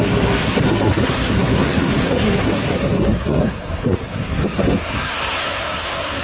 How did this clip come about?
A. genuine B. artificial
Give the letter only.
B